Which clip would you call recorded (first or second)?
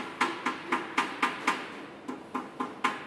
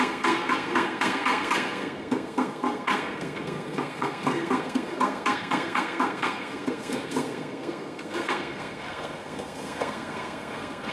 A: first